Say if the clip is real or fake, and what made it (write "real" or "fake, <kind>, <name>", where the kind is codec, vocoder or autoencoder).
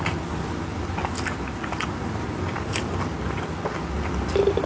real